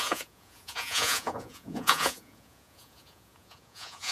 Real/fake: fake